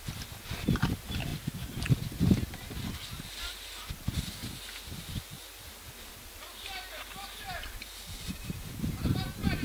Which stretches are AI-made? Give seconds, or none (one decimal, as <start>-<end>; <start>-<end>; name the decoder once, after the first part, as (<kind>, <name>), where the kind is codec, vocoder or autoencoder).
none